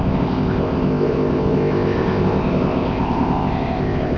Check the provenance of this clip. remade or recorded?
remade